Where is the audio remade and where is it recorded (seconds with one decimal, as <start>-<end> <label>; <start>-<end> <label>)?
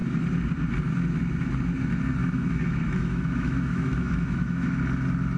0.0-2.2 recorded; 2.2-4.8 remade; 4.8-5.4 recorded